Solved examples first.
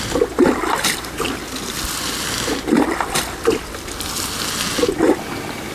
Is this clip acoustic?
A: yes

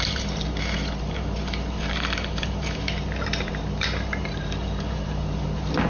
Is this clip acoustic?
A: no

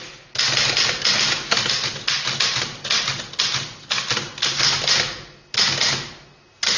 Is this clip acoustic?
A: yes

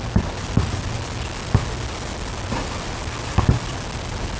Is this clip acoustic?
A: yes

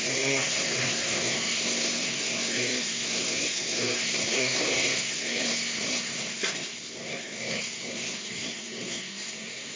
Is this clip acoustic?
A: no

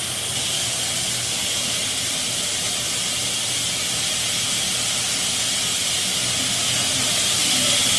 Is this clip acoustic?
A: yes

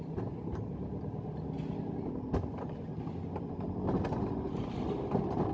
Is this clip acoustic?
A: yes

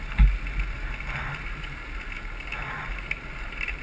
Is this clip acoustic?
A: yes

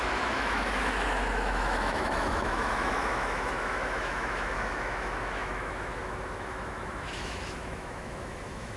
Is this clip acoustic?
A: no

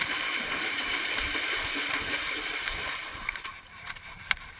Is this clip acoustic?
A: no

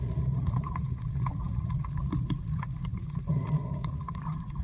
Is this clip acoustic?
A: no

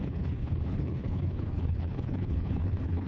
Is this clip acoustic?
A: no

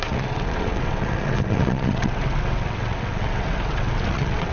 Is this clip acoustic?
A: no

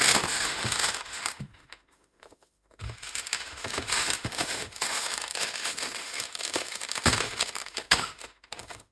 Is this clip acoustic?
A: no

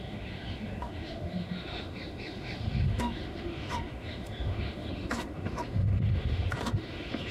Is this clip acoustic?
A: no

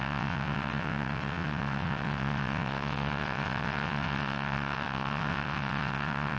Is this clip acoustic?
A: no